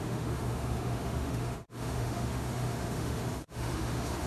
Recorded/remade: remade